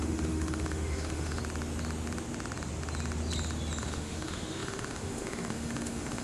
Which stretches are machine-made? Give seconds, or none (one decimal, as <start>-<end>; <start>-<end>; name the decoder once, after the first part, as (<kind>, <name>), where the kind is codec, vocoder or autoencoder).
0.0-1.4 (autoencoder, DAC-VAE); 3.8-6.2